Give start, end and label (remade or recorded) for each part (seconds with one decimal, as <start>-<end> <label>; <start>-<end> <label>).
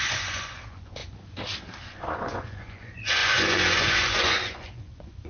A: 0.0-1.0 remade; 1.0-1.8 recorded; 1.8-5.3 remade